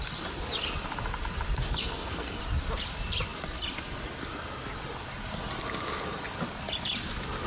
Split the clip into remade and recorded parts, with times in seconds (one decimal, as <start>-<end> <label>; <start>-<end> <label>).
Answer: 0.0-1.8 recorded; 1.8-2.4 remade; 2.4-7.5 recorded